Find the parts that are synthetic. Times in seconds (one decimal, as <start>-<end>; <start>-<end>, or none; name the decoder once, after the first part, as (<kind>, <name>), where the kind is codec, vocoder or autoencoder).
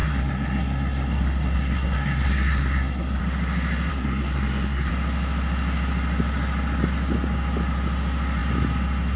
0.0-3.2 (codec, SNAC); 3.9-4.9